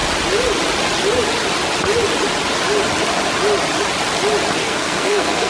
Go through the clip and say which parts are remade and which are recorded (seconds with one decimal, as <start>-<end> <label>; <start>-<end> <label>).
0.0-4.6 recorded; 4.6-5.5 remade